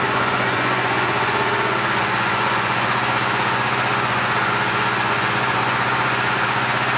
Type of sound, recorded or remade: remade